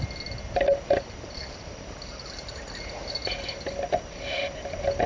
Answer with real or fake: real